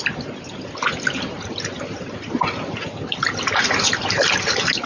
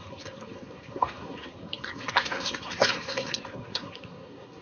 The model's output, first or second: second